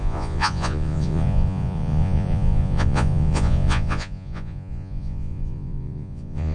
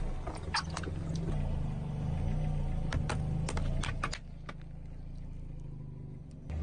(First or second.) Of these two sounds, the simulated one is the first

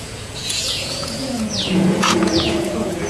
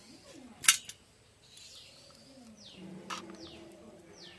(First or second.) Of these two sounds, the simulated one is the first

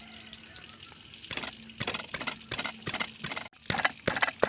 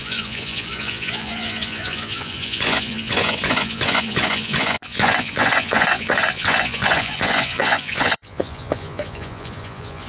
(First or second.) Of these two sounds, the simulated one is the second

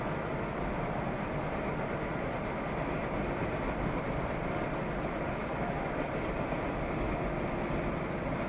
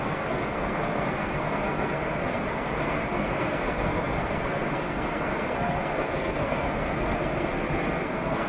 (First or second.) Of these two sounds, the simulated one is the second